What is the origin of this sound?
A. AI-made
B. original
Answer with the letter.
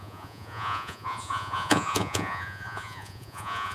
A